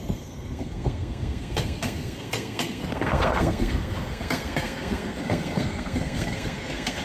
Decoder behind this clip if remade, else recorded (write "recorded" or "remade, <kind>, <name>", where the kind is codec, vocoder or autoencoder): remade, codec, SNAC